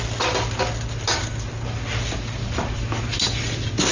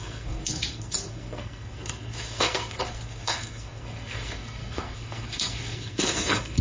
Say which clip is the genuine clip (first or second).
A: first